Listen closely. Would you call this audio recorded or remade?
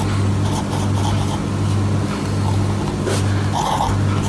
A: recorded